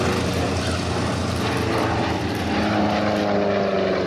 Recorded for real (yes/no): yes